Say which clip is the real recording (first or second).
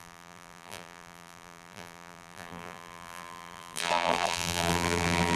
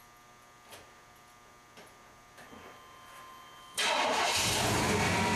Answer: second